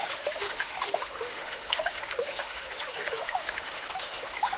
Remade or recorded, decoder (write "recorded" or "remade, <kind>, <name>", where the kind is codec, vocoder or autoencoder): remade, autoencoder, DAC-VAE